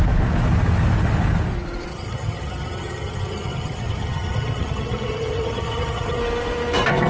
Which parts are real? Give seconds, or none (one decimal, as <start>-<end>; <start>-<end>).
0.0-1.9; 6.2-7.1